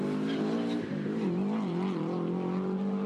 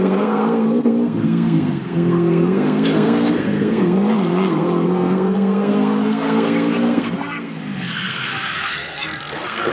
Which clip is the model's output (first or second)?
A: second